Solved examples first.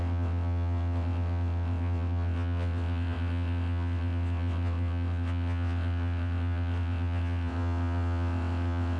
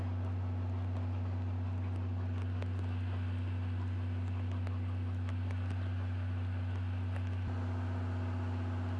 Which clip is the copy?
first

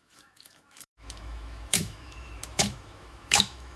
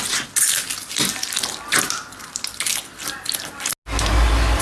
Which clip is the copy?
first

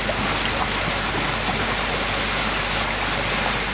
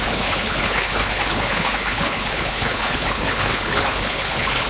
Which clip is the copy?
second